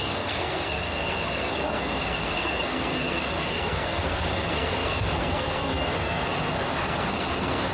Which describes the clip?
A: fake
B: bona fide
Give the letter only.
A